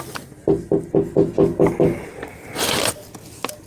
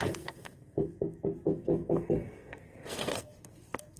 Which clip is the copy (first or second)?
second